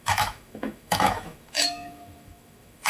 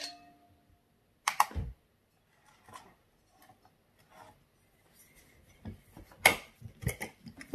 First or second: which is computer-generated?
first